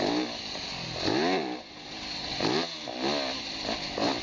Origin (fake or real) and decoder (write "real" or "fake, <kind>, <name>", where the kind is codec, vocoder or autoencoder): real